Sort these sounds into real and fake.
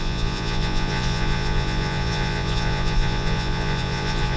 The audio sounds fake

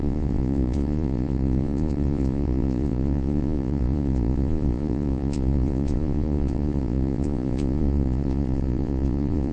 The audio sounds fake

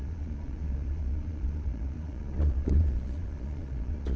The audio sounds fake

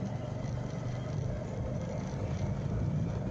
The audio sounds real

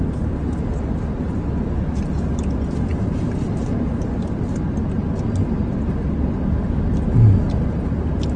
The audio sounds real